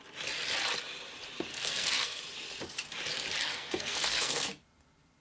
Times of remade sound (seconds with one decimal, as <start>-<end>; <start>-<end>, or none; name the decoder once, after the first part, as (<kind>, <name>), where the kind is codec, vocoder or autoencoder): 1.5-2.2 (codec, SNAC); 3.4-4.6